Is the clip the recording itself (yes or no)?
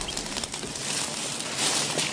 yes